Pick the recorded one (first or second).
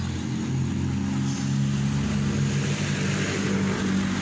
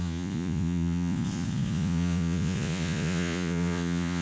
first